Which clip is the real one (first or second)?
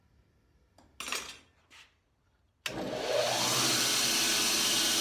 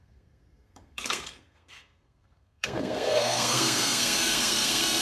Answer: first